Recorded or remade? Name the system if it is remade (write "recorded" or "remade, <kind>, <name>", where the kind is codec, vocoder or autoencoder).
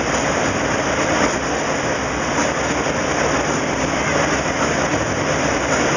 remade, vocoder, BigVGAN v2